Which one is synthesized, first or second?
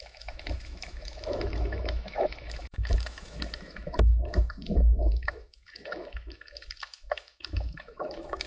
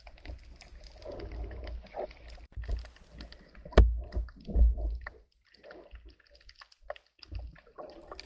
first